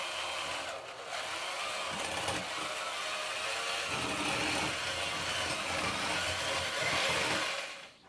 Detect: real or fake real